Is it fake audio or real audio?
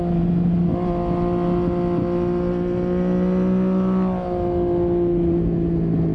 real